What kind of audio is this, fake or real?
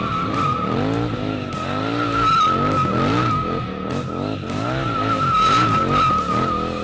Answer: real